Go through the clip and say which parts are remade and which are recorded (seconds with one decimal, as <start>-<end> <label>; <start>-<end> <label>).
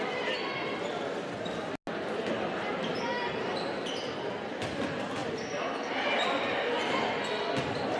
0.0-8.0 recorded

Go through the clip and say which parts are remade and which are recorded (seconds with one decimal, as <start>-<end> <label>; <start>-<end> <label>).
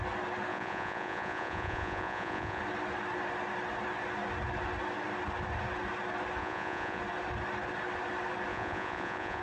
0.0-0.5 recorded; 0.5-2.6 remade; 2.6-6.4 recorded; 6.4-7.0 remade; 7.0-8.5 recorded; 8.5-9.4 remade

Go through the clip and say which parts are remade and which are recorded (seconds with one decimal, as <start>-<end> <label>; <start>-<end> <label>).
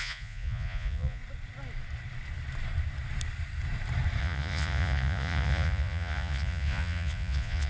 0.0-1.2 remade; 1.2-4.2 recorded; 4.2-7.7 remade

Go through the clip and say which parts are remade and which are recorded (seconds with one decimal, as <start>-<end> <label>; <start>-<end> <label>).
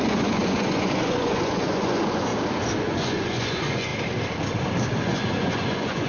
0.0-2.3 remade; 2.3-2.8 recorded; 2.8-3.9 remade; 3.9-5.0 recorded; 5.0-6.1 remade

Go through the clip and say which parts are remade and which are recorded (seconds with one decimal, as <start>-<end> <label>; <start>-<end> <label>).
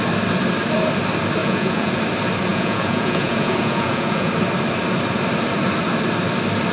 0.0-1.4 recorded; 1.4-2.0 remade; 2.0-2.5 recorded; 2.5-4.3 remade; 4.3-6.7 recorded